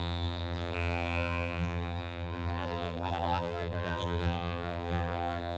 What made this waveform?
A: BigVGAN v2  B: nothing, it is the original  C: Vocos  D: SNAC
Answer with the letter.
A